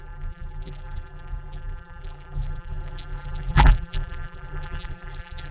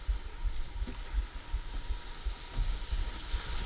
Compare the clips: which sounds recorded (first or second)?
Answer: second